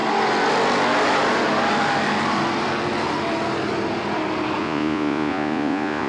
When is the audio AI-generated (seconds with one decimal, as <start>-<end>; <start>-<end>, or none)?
4.6-6.1